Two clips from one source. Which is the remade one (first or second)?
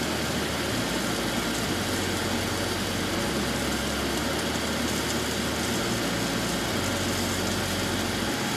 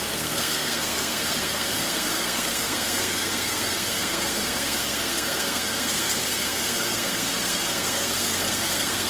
second